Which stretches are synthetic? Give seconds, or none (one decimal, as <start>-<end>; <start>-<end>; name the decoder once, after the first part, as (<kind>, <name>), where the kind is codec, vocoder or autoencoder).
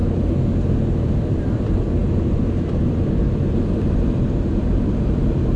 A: 1.0-5.6 (vocoder, BigVGAN v2)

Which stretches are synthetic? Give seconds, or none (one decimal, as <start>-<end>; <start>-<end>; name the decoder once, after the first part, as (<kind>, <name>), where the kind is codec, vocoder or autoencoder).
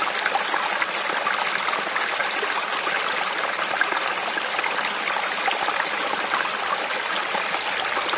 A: 2.2-6.9 (vocoder, BigVGAN v2)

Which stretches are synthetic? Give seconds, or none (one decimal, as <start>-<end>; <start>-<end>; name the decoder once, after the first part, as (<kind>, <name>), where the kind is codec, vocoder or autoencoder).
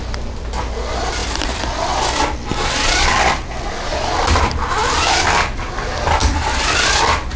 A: 1.2-2.0 (vocoder, BigVGAN v2)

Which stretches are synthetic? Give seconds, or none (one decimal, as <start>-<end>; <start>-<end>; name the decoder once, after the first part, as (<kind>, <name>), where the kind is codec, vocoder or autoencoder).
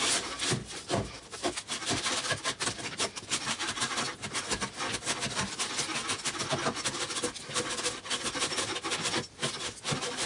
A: 1.8-3.8 (vocoder, BigVGAN v2)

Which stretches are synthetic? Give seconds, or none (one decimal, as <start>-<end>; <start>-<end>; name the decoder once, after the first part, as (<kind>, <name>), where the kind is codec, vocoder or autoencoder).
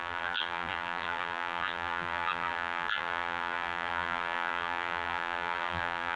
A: 0.0-6.2 (vocoder, BigVGAN v2)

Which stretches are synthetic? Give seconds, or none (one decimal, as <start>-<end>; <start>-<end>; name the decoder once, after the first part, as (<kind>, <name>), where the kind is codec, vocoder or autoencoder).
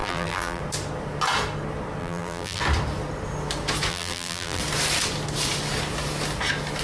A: 0.0-0.6 (vocoder, BigVGAN v2); 2.0-2.6; 3.9-4.6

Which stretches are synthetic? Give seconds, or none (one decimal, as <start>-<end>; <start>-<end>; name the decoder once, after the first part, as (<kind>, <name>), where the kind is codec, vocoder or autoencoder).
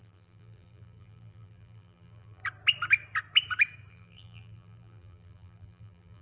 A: 0.0-2.4 (vocoder, BigVGAN v2); 3.9-6.2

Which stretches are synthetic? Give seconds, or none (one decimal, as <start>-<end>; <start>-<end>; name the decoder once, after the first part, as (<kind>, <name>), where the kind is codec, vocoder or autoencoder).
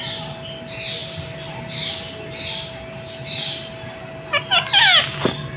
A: 1.0-1.9 (vocoder, BigVGAN v2)